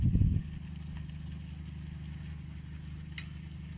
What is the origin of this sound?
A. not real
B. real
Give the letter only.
B